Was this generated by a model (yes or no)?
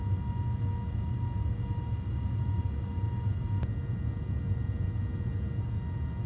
no